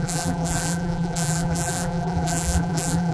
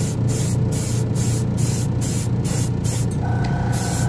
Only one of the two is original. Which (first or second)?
second